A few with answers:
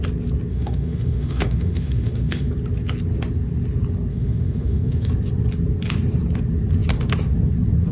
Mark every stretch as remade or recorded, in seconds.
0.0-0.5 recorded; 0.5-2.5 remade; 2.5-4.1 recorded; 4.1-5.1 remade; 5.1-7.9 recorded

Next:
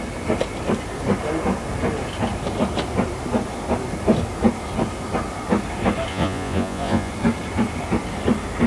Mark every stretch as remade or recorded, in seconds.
0.0-6.1 recorded; 6.1-7.1 remade; 7.1-8.7 recorded

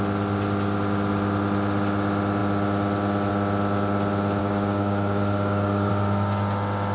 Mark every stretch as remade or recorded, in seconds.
0.0-4.4 recorded; 4.4-5.9 remade; 5.9-6.9 recorded

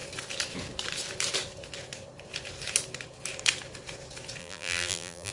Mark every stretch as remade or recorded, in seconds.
0.0-4.4 recorded; 4.4-5.3 remade

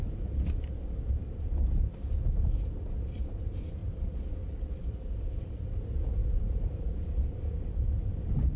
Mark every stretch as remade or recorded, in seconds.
0.0-3.8 recorded; 3.8-5.8 remade; 5.8-8.6 recorded

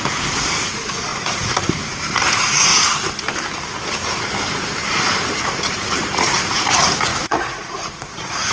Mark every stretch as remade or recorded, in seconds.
0.0-2.7 remade; 2.7-5.3 recorded; 5.3-8.5 remade

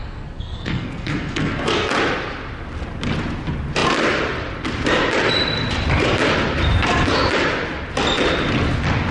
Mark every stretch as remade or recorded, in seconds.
0.0-1.9 remade; 1.9-9.1 recorded

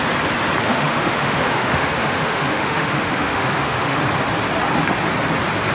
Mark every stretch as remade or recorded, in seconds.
0.0-0.6 recorded; 0.6-4.0 remade; 4.0-5.7 recorded